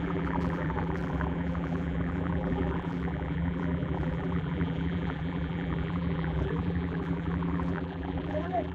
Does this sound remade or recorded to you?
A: remade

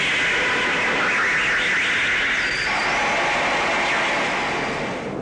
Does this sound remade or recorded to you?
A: recorded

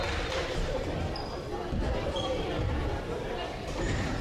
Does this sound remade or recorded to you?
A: remade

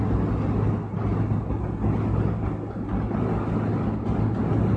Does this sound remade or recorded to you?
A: recorded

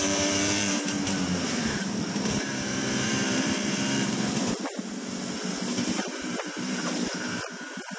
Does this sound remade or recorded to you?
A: remade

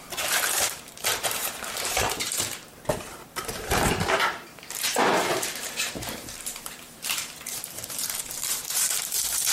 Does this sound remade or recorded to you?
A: remade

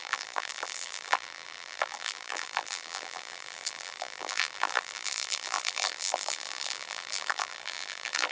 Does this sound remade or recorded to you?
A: remade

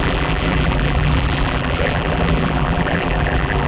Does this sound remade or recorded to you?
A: remade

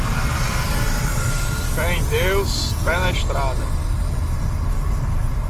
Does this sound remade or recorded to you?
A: recorded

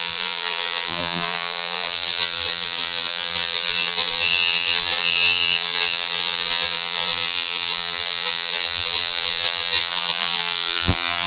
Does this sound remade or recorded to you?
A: remade